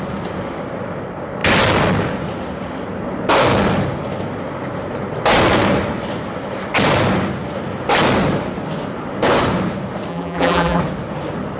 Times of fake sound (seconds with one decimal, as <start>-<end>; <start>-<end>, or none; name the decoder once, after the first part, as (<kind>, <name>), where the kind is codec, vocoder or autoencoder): 10.1-10.8 (vocoder, BigVGAN v2)